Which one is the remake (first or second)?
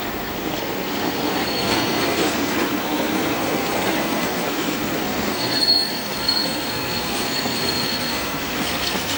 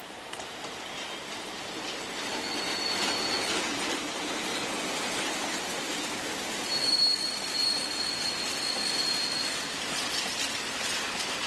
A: first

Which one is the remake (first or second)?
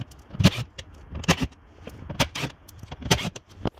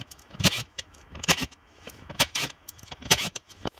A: second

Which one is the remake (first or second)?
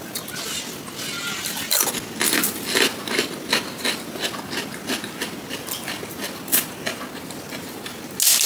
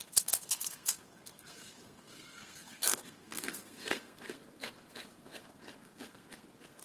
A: second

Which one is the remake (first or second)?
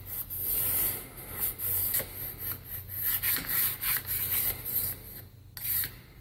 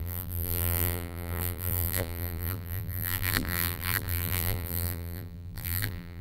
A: second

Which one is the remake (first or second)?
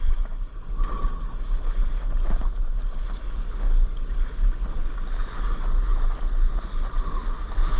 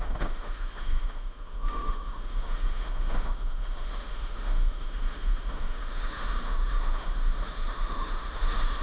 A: second